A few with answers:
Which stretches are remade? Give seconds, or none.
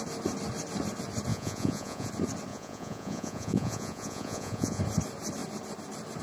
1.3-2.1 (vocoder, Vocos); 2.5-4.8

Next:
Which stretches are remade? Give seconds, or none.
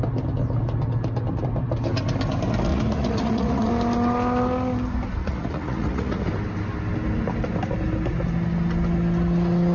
2.7-3.7 (vocoder, Vocos); 5.2-6.2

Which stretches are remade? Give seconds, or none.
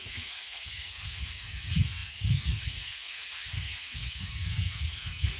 0.0-5.4 (codec, SNAC)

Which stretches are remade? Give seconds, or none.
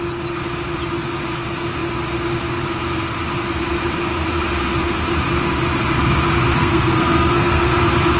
6.6-7.7 (codec, SNAC)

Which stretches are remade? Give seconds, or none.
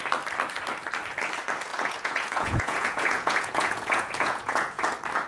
1.7-4.8 (vocoder, Vocos)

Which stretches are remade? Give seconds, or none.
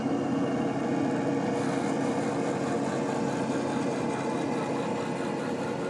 none